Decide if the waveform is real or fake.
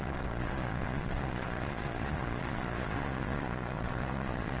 fake